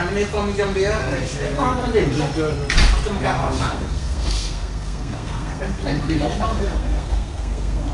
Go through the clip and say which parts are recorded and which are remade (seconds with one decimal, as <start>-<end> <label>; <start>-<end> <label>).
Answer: 0.0-1.0 recorded; 1.0-1.8 remade; 1.8-3.4 recorded; 3.4-7.9 remade